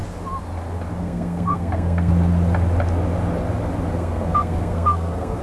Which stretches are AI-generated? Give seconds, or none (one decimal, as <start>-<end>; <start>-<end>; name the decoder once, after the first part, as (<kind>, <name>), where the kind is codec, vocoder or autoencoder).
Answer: 1.0-2.1 (codec, SNAC); 3.9-5.4